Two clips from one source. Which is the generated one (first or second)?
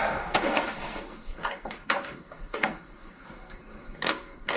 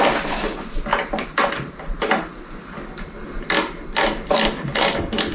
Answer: first